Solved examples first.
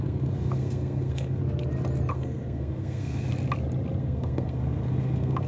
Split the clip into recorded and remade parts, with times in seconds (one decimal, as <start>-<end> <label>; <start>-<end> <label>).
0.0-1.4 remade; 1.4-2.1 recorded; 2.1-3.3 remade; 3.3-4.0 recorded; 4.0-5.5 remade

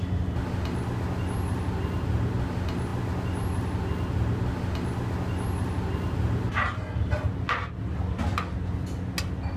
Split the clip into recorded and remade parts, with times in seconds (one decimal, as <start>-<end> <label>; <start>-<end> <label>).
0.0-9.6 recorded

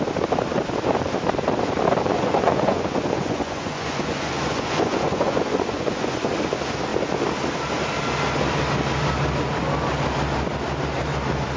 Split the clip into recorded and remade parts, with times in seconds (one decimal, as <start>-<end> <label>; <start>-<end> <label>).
0.0-2.0 recorded; 2.0-6.3 remade; 6.3-11.6 recorded

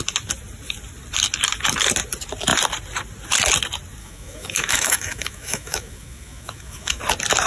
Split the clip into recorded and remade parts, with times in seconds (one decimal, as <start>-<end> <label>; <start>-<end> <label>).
0.0-4.0 recorded; 4.0-7.0 remade; 7.0-7.5 recorded

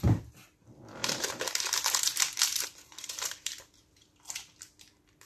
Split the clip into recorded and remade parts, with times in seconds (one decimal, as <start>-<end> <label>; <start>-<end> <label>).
0.0-1.0 recorded; 1.0-4.2 remade; 4.2-5.3 recorded

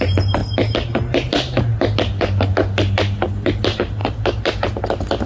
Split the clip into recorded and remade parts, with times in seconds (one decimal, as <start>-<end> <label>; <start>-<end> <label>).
0.0-5.3 recorded

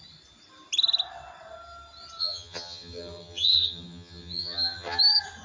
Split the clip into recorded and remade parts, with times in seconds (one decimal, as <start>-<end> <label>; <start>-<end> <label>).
0.0-2.2 recorded; 2.2-5.0 remade; 5.0-5.4 recorded

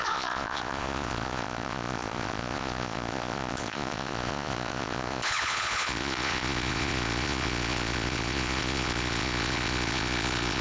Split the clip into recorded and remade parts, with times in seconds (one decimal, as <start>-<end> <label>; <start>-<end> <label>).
0.0-10.6 remade